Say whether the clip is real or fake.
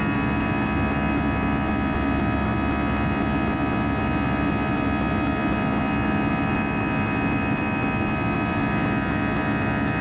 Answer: real